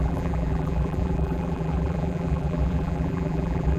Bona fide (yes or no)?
no